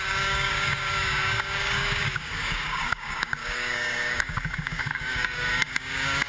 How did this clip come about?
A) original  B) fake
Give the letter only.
B